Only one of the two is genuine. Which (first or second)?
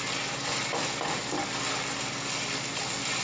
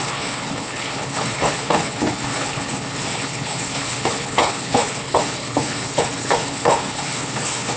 first